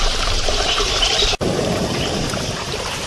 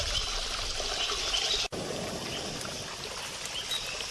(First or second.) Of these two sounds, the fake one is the first